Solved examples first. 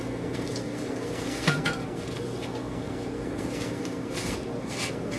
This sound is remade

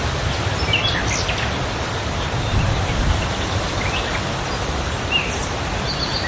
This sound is recorded